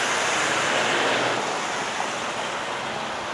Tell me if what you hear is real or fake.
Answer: real